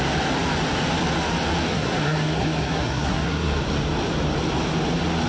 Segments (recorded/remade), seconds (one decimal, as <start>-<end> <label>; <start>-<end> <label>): 0.0-1.7 recorded; 1.7-3.6 remade; 3.6-5.3 recorded